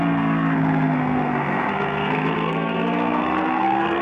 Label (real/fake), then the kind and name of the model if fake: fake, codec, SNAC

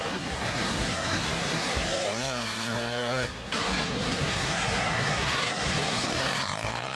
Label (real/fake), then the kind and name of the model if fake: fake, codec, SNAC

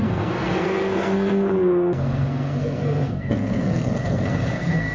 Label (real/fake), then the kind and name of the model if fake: fake, codec, SNAC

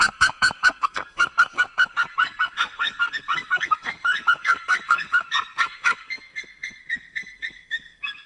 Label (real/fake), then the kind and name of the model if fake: fake, codec, SNAC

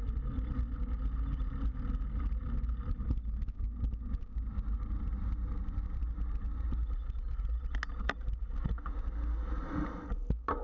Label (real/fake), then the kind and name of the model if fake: real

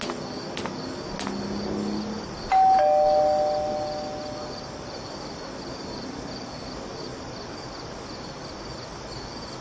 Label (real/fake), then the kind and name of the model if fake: real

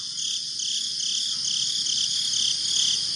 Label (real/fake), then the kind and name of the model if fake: real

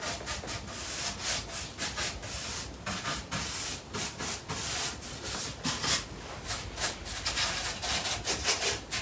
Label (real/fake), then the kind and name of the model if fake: real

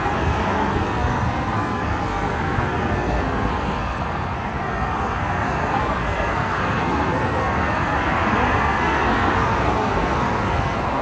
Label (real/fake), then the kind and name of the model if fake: fake, codec, SNAC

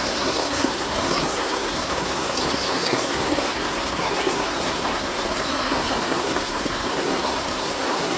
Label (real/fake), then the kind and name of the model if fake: fake, codec, SNAC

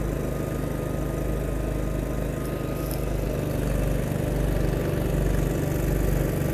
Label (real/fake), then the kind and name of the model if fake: real